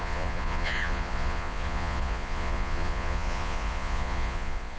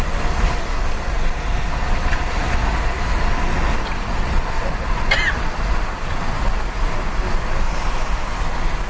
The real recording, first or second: second